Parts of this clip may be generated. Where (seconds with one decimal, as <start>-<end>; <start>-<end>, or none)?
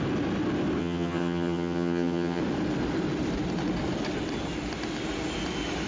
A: 0.8-2.4